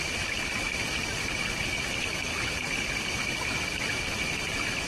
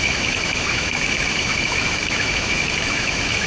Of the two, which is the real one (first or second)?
first